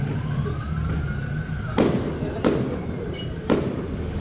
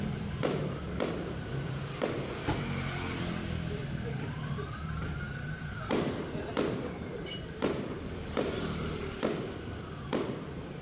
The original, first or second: first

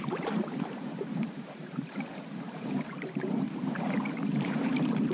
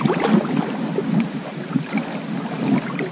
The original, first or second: second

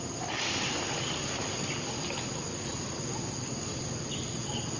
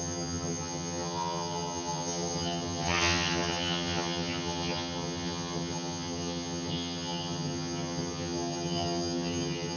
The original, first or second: first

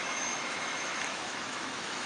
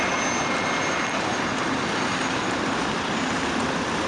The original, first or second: second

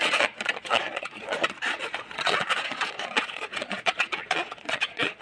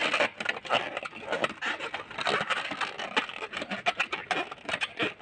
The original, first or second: second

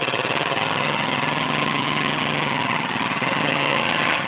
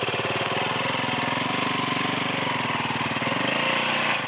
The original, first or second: second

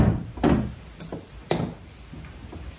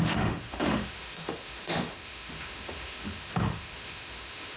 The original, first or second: first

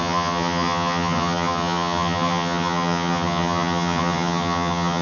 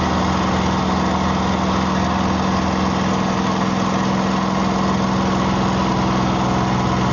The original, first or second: second